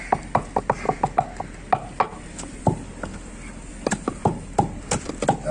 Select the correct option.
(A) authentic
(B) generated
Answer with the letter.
A